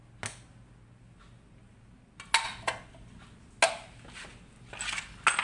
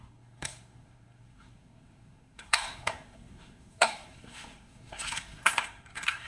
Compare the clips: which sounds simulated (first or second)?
second